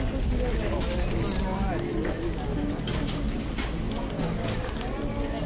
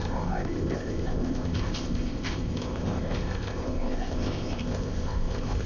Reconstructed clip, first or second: second